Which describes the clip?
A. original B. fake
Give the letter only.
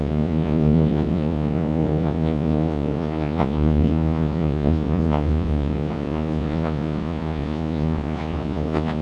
B